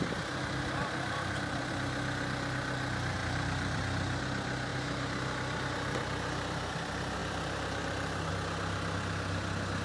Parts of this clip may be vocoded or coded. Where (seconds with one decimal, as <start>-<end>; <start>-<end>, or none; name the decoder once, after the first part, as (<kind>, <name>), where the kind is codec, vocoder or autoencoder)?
0.8-1.7 (vocoder, BigVGAN v2); 3.2-3.8; 4.7-5.7; 7.2-8.3